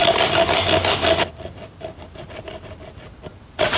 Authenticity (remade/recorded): recorded